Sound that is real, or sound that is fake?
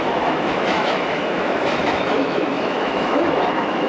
fake